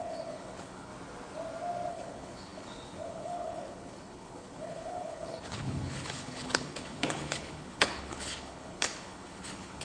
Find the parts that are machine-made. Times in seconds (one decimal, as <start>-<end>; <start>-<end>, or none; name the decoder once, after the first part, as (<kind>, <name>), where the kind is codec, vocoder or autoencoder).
0.0-0.9 (codec, HILCodec); 1.9-9.8